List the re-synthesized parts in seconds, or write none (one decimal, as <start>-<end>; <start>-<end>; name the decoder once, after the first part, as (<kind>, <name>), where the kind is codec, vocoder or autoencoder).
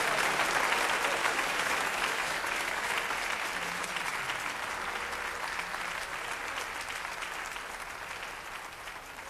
1.2-2.9 (codec, DAC)